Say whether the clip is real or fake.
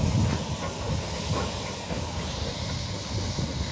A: real